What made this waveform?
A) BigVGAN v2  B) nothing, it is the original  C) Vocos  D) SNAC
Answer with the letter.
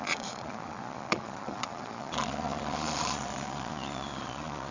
C